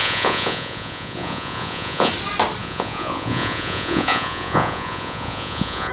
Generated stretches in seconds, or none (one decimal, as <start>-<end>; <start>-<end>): 0.0-2.1; 2.6-5.9